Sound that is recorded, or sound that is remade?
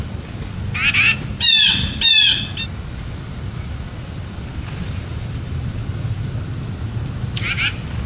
recorded